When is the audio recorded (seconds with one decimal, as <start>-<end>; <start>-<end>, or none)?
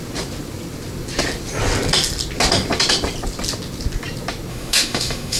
0.0-4.5